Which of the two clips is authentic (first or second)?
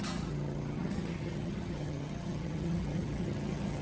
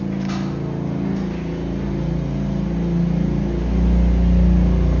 second